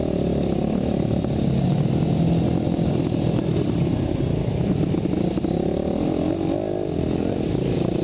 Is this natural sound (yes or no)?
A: yes